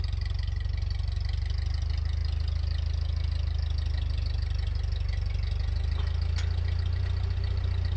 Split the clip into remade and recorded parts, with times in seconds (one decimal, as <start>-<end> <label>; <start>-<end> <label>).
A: 0.0-8.0 recorded